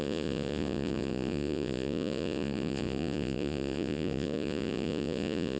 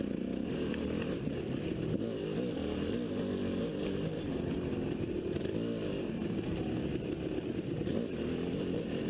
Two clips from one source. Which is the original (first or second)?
second